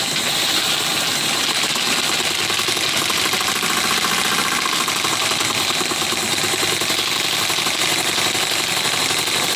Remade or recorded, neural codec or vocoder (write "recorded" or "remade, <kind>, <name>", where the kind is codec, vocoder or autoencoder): recorded